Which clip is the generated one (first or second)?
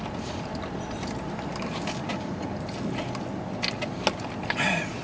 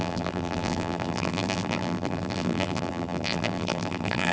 second